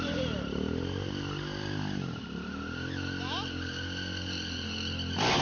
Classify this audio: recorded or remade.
recorded